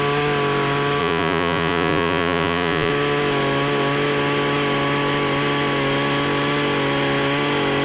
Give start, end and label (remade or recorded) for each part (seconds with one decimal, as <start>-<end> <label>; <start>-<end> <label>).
0.0-1.0 recorded; 1.0-2.9 remade; 2.9-7.8 recorded